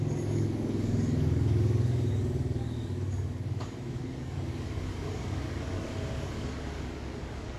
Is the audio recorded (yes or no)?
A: no